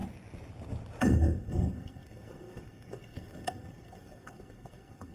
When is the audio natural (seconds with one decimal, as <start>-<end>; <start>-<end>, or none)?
0.0-1.0